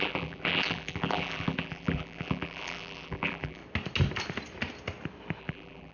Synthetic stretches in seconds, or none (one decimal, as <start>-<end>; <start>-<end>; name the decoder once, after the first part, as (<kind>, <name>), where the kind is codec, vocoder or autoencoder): 0.0-3.6 (vocoder, BigVGAN v2); 5.4-5.9